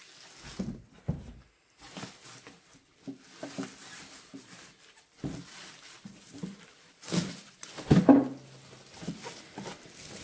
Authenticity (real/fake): real